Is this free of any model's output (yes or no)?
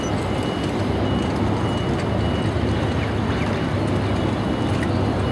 yes